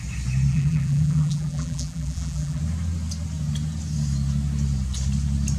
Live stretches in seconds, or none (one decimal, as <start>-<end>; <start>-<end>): 0.0-0.5; 2.6-5.6